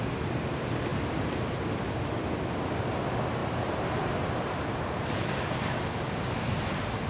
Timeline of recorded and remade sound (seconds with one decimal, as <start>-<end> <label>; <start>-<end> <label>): 0.0-3.4 recorded; 3.4-5.9 remade; 5.9-7.1 recorded